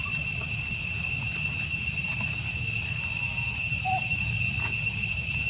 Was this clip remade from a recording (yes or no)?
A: no